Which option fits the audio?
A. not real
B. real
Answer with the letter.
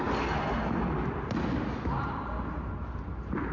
B